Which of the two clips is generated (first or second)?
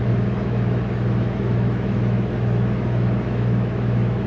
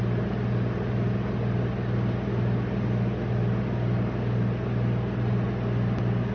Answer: first